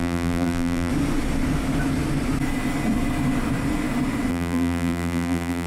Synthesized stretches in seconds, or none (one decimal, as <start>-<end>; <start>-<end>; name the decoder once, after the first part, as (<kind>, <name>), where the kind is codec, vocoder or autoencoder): 0.0-0.9 (vocoder, BigVGAN v2); 4.3-5.7